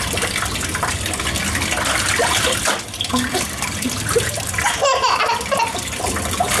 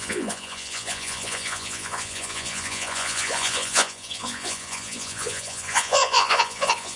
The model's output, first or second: second